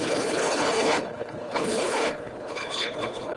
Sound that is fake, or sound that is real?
fake